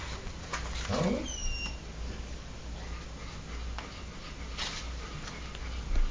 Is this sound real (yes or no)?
yes